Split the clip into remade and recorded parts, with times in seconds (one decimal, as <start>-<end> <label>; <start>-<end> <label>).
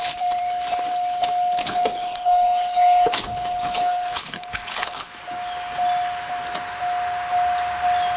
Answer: 0.0-1.6 recorded; 1.6-5.1 remade; 5.1-8.2 recorded